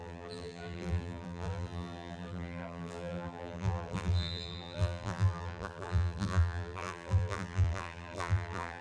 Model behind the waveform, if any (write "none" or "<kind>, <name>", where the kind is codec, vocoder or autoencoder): vocoder, BigVGAN v2